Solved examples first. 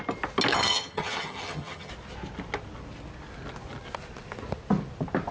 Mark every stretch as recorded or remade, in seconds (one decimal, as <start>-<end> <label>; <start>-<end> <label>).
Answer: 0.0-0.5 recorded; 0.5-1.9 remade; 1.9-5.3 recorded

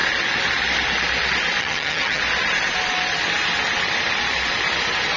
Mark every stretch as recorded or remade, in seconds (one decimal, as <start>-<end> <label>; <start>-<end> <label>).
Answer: 0.0-1.6 recorded; 1.6-2.2 remade; 2.2-5.2 recorded

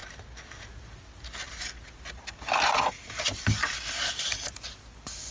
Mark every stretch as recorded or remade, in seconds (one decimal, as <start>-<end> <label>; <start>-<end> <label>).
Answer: 0.0-5.3 recorded

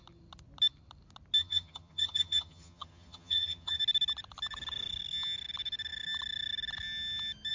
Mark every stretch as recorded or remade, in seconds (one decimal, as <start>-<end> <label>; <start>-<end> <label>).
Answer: 0.0-1.4 recorded; 1.4-3.8 remade; 3.8-7.5 recorded

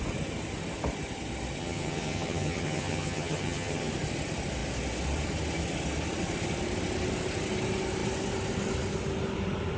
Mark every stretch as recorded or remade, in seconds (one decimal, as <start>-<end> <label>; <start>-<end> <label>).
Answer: 0.0-1.6 recorded; 1.6-3.9 remade; 3.9-9.8 recorded

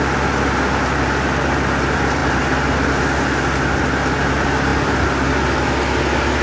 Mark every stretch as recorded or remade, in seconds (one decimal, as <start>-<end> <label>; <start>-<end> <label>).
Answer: 0.0-6.4 recorded

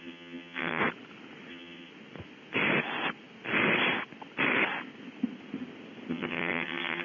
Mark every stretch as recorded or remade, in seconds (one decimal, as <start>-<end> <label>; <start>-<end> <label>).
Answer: 0.0-0.8 remade; 0.8-1.5 recorded; 1.5-1.9 remade; 1.9-6.1 recorded; 6.1-7.0 remade

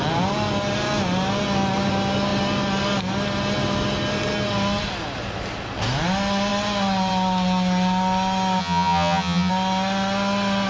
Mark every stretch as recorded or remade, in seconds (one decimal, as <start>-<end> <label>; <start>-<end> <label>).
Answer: 0.0-8.6 recorded; 8.6-9.5 remade; 9.5-10.7 recorded